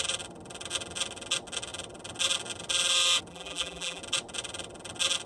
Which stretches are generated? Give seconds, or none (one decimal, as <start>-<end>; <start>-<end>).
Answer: 3.3-4.0